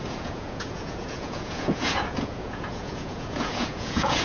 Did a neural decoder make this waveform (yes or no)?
yes